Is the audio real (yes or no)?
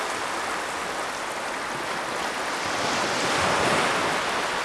yes